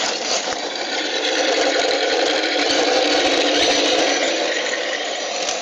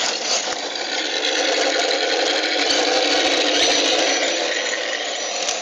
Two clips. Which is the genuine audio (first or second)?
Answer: second